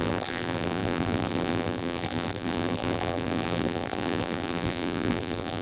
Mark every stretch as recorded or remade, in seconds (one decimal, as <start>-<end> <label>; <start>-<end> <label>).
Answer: 0.0-5.6 remade